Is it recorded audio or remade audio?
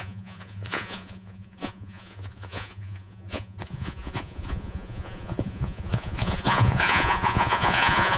remade